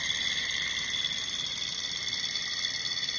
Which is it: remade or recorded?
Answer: recorded